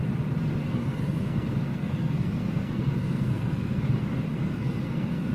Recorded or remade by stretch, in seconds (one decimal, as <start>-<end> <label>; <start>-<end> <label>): 0.0-0.6 recorded; 0.6-3.8 remade; 3.8-4.3 recorded; 4.3-5.3 remade